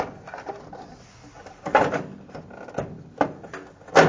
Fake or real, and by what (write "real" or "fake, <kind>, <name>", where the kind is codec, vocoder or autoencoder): real